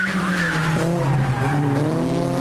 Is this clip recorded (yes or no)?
yes